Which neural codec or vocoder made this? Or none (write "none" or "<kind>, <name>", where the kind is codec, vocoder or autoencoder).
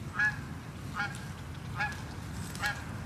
none